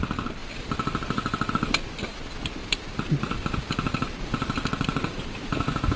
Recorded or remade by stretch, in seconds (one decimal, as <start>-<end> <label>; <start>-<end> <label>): 0.0-6.0 recorded